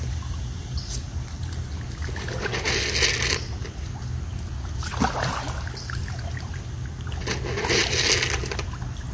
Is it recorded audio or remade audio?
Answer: recorded